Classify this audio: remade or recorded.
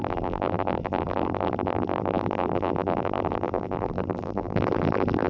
remade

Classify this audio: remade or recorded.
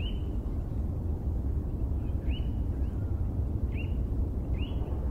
recorded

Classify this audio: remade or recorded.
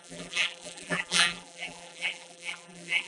remade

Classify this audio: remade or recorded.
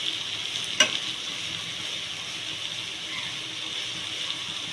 recorded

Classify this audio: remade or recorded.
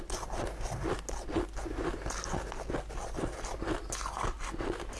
recorded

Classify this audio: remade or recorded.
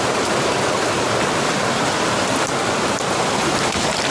recorded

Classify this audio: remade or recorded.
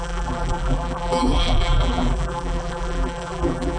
remade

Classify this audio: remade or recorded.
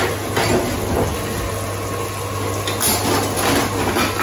recorded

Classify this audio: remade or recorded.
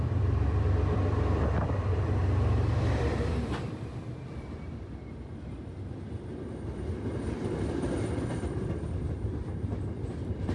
remade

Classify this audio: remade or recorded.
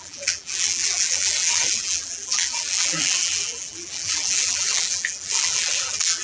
remade